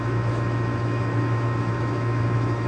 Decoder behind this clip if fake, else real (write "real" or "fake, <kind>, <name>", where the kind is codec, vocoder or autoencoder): fake, autoencoder, DAC-VAE